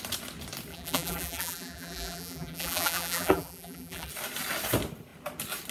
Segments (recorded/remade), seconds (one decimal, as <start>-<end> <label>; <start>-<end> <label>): 0.0-0.7 recorded; 0.7-4.1 remade; 4.1-5.7 recorded